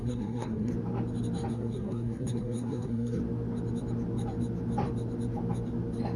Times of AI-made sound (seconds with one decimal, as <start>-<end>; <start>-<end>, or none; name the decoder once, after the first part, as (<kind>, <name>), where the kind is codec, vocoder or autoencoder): 0.0-0.7 (codec, SNAC); 1.5-3.2